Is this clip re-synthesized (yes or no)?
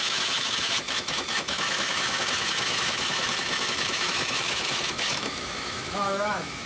yes